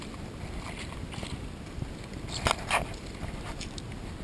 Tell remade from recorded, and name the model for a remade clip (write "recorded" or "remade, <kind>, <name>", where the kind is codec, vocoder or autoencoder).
recorded